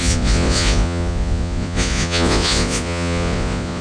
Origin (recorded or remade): remade